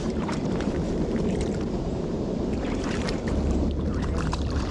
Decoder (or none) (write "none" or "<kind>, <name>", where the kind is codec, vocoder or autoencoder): vocoder, BigVGAN v2